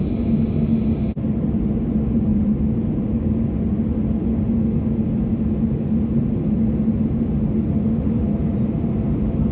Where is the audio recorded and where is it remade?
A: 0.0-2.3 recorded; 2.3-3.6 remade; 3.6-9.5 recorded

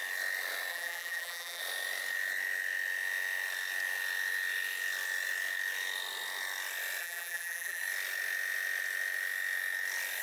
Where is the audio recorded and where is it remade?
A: 0.0-0.7 recorded; 0.7-1.6 remade; 1.6-7.0 recorded; 7.0-7.8 remade; 7.8-10.2 recorded

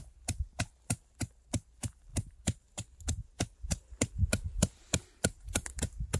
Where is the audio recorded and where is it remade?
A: 0.0-2.1 recorded; 2.1-5.8 remade; 5.8-6.2 recorded

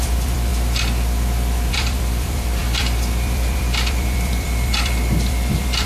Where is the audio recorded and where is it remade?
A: 0.0-0.5 remade; 0.5-1.7 recorded; 1.7-5.9 remade

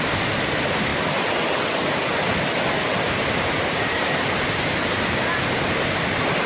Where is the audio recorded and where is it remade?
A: 0.0-6.5 recorded

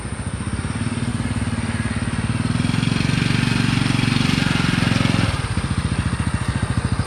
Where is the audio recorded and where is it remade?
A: 0.0-7.1 recorded

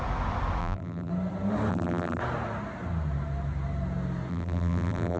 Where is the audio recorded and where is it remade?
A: 0.0-0.6 recorded; 0.6-1.1 remade; 1.1-1.7 recorded; 1.7-2.2 remade; 2.2-4.3 recorded; 4.3-5.2 remade